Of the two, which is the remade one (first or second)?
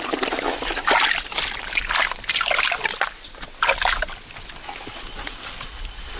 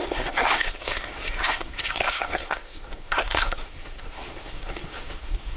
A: second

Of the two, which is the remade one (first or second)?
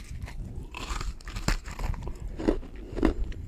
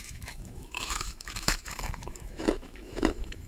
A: second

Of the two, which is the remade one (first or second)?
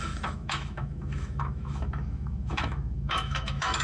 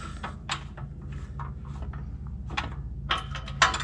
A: first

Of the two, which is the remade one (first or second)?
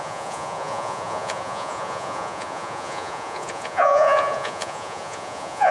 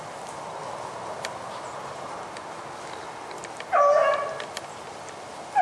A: first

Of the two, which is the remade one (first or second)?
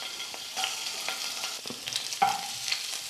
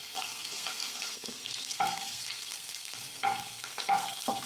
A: second